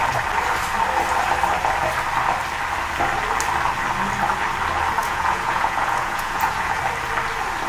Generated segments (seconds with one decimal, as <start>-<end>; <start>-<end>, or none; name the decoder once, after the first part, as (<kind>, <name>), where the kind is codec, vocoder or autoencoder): 5.0-6.8 (vocoder, Vocos)